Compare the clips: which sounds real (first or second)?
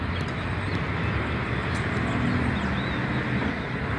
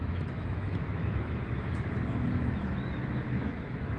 first